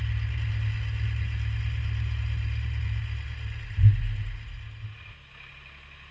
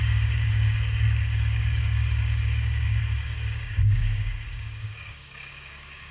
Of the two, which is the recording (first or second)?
first